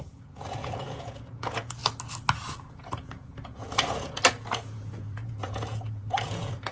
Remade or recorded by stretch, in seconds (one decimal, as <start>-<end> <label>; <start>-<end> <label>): 0.0-1.8 remade; 1.8-2.7 recorded; 2.7-6.7 remade